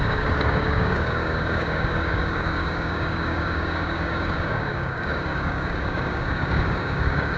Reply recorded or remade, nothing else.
remade